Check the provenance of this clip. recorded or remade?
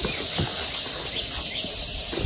recorded